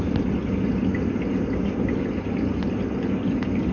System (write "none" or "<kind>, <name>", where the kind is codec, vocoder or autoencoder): none